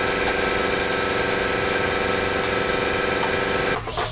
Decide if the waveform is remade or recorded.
recorded